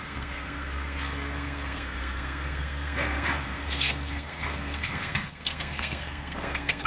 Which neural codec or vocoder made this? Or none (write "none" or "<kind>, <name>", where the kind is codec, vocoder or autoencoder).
codec, SNAC